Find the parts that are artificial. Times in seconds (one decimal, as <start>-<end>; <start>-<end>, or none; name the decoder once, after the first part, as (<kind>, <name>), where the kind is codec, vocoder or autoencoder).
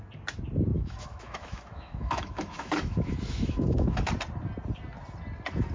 0.7-4.1 (autoencoder, DAC-VAE)